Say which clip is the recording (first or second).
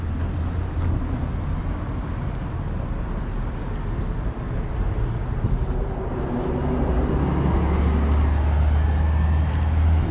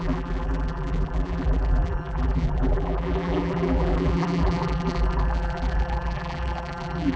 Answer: first